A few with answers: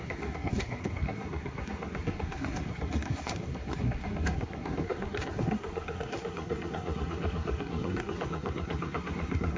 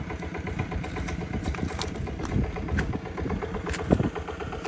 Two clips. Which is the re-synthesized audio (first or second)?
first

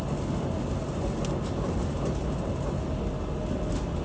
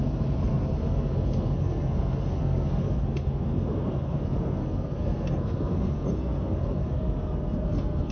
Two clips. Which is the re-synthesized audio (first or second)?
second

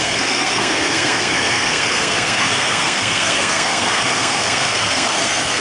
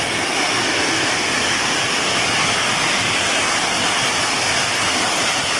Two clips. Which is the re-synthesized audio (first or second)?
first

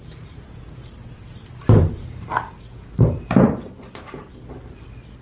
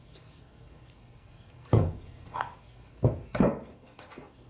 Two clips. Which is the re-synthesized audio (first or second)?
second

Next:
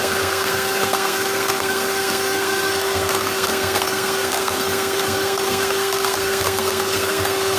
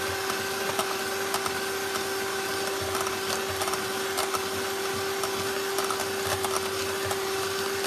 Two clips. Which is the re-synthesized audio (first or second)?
first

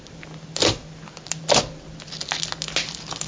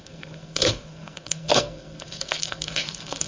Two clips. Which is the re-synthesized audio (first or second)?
second